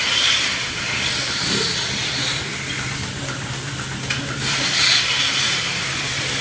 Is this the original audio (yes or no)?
no